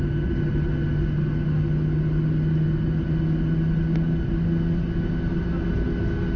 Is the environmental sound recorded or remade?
recorded